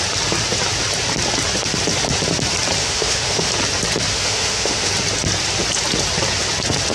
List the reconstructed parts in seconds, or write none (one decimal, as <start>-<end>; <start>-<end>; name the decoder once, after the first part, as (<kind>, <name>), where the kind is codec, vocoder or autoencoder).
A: 2.8-3.5 (autoencoder, DAC-VAE); 4.1-4.9